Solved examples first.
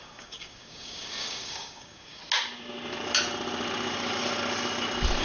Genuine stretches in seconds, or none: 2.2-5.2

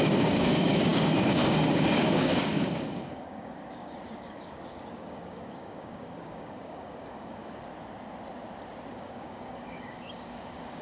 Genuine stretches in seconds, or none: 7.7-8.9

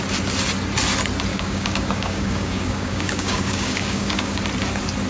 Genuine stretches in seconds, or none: 0.0-1.3; 4.4-5.1

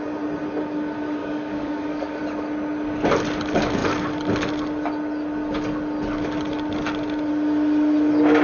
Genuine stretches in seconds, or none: 0.0-1.2; 2.2-8.4

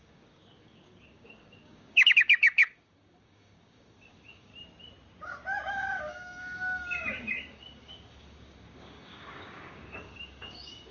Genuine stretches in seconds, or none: 4.5-5.7

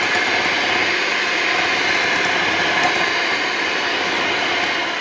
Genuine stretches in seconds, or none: 0.0-3.9; 4.5-5.0

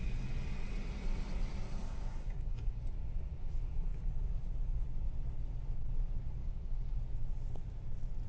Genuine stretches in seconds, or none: 0.0-1.8; 2.9-6.4; 7.0-8.3

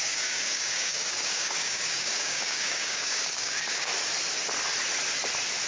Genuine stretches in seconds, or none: 3.9-5.7